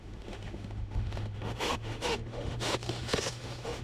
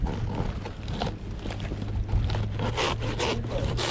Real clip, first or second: second